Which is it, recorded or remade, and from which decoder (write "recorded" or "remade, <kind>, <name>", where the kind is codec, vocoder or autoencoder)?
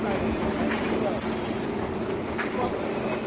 recorded